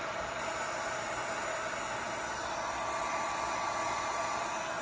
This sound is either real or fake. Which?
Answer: real